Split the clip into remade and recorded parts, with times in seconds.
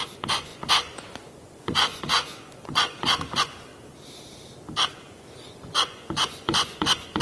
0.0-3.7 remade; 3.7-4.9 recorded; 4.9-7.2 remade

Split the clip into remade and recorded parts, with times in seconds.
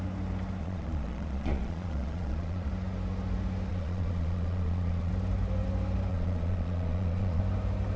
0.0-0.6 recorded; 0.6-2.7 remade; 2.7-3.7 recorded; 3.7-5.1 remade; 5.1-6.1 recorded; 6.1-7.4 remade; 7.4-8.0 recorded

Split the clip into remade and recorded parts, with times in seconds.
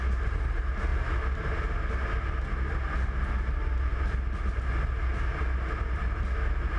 0.0-6.8 recorded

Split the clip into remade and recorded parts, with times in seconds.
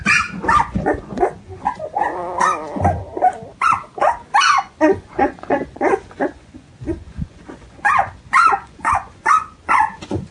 0.0-2.2 remade; 2.2-4.6 recorded; 4.6-10.3 remade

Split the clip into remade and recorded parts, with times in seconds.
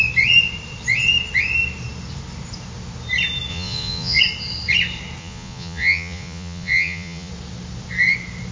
0.0-3.5 recorded; 3.5-4.2 remade; 4.2-5.2 recorded; 5.2-7.3 remade; 7.3-8.5 recorded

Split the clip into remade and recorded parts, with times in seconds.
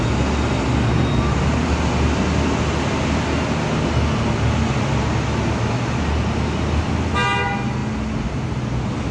0.0-9.1 recorded